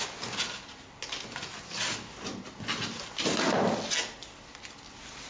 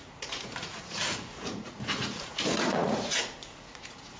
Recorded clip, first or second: first